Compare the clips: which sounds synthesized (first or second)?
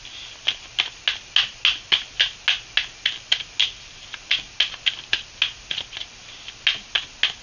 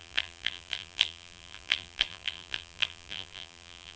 second